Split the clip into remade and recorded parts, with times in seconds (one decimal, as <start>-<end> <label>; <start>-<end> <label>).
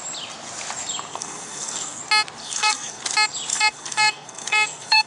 0.0-1.1 recorded; 1.1-2.0 remade; 2.0-2.4 recorded; 2.4-3.0 remade; 3.0-3.5 recorded; 3.5-5.1 remade